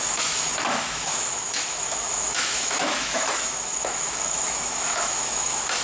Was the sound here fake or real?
fake